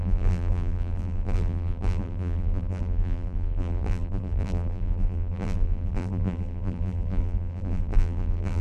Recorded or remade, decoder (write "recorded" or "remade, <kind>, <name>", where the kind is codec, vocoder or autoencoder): remade, vocoder, BigVGAN v2